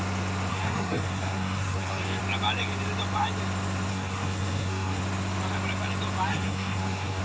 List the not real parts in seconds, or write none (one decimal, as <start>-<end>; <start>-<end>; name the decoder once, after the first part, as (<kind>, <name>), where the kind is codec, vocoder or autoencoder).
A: 0.5-2.2 (codec, SNAC); 3.9-5.0; 6.3-7.2